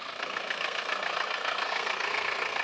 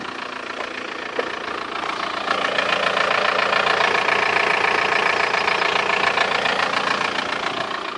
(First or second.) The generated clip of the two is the first